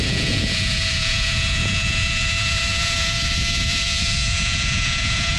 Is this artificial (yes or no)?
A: yes